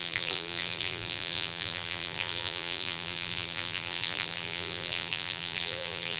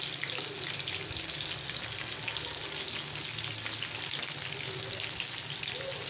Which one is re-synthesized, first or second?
first